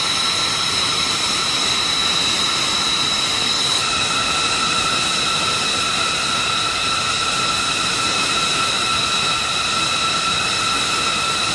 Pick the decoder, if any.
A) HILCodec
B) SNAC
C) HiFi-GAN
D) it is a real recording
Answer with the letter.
D